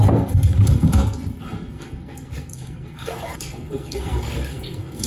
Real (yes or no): no